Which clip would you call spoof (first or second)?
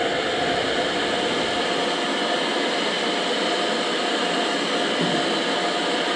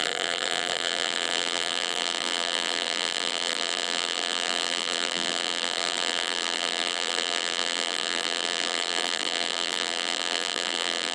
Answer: second